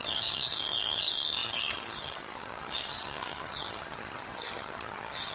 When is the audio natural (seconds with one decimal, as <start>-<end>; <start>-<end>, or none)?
none